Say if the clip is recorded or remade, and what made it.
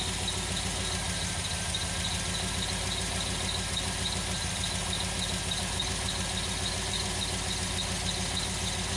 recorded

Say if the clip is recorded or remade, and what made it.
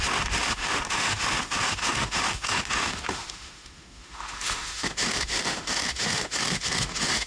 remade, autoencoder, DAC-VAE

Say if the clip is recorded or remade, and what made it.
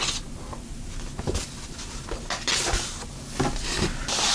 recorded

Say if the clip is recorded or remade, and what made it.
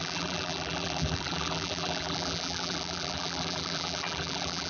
remade, vocoder, BigVGAN v2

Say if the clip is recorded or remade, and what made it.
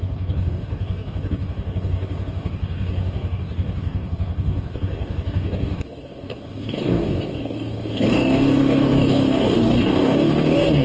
remade, codec, DAC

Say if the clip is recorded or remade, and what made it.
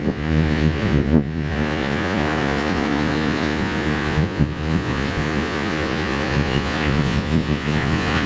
remade, vocoder, Vocos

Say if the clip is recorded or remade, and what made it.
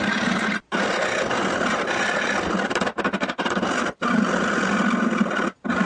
recorded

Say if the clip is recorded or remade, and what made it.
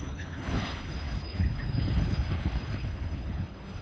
remade, codec, HILCodec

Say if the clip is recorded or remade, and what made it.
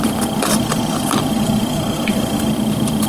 remade, vocoder, BigVGAN v2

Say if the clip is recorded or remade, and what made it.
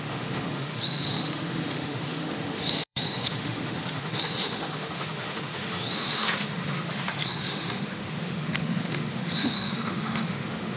remade, autoencoder, DAC-VAE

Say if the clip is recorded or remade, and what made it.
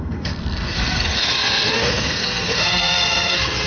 remade, codec, SNAC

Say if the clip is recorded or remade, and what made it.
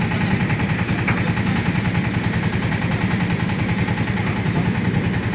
recorded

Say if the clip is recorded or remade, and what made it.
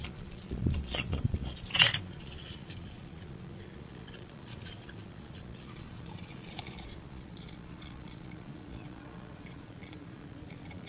remade, vocoder, Vocos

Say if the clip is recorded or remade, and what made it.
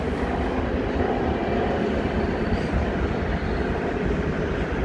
recorded